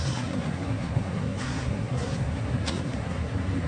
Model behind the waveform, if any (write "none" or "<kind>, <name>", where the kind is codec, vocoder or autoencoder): codec, SNAC